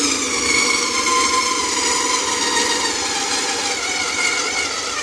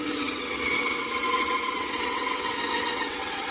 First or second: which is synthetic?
second